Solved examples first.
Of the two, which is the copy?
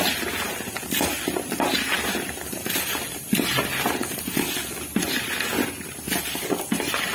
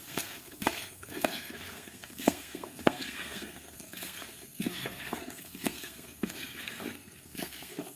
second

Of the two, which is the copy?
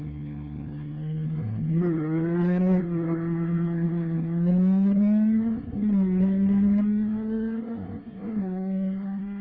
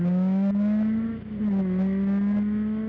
first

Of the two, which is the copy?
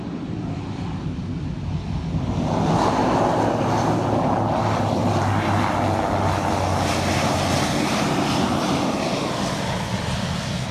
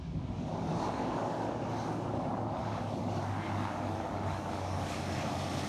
second